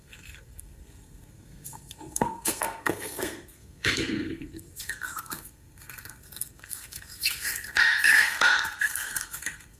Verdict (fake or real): fake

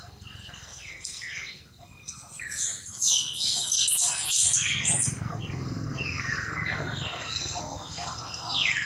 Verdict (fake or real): fake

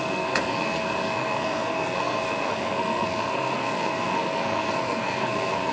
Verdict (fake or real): fake